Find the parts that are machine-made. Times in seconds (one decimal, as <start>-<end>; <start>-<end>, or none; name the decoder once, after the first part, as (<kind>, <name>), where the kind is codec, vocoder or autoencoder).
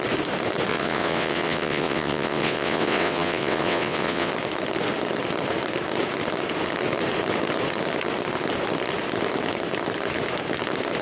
0.7-4.3 (vocoder, WaveNeXt)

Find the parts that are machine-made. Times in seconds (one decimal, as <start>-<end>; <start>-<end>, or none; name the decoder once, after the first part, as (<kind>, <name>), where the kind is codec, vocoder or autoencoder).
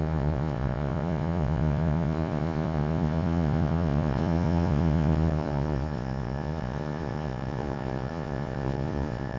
0.0-9.4 (vocoder, Vocos)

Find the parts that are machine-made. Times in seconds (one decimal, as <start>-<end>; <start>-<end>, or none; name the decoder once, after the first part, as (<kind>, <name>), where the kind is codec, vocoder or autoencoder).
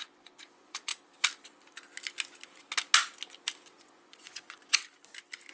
0.0-0.9 (vocoder, Vocos); 3.8-4.8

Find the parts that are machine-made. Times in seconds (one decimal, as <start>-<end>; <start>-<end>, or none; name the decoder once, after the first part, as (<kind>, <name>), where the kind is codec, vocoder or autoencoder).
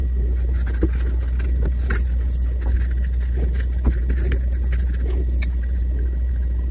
none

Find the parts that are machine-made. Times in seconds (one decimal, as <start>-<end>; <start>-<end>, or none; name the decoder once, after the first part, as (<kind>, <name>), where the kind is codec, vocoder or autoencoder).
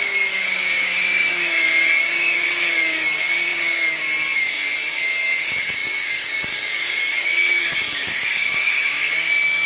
0.0-9.7 (codec, DAC)